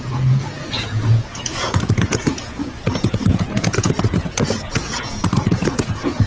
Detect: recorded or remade remade